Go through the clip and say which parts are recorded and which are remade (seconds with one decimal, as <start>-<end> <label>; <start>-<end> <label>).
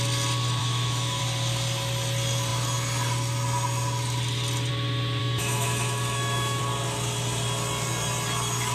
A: 0.0-0.6 recorded; 0.6-1.2 remade; 1.2-5.2 recorded; 5.2-6.6 remade; 6.6-8.7 recorded